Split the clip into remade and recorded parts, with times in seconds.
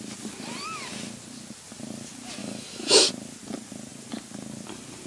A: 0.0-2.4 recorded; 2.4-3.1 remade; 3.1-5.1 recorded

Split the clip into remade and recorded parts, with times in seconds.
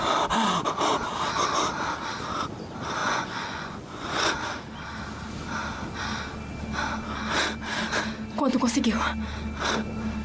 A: 0.0-3.0 recorded; 3.0-4.3 remade; 4.3-10.2 recorded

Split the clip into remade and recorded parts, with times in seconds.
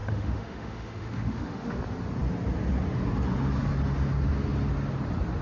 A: 0.0-1.8 remade; 1.8-5.4 recorded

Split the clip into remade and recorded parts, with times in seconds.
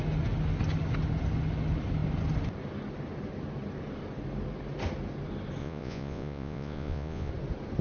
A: 0.0-5.6 recorded; 5.6-7.3 remade; 7.3-7.8 recorded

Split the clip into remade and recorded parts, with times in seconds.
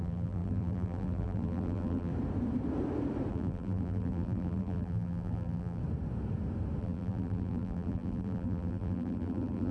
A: 0.0-2.1 remade; 2.1-3.3 recorded; 3.3-5.8 remade; 5.8-6.8 recorded; 6.8-9.7 remade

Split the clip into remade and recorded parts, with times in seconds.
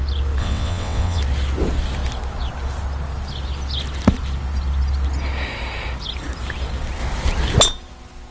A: 0.0-0.4 recorded; 0.4-1.2 remade; 1.2-8.3 recorded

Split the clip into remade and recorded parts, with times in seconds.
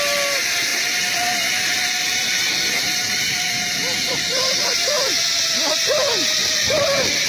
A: 0.0-7.3 recorded